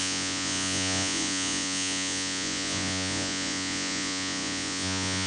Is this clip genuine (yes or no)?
no